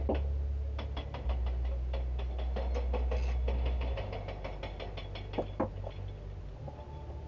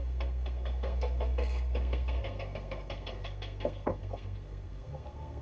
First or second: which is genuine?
first